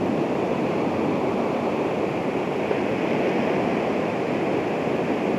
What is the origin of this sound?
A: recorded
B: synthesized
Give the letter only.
A